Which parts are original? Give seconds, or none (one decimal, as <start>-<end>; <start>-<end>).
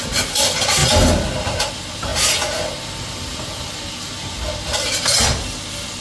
0.8-1.7; 2.1-3.0